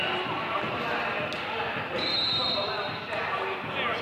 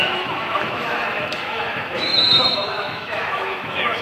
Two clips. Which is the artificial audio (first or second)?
second